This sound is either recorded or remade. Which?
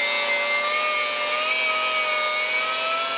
recorded